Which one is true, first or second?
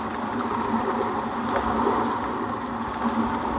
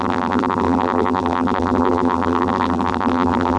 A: first